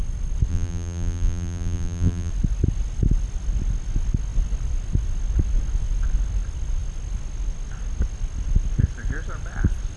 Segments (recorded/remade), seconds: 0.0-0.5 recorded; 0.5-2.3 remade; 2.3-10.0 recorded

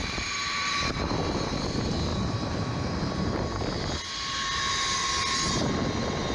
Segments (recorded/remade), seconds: 0.0-1.0 remade; 1.0-2.1 recorded; 2.1-3.1 remade; 3.1-6.3 recorded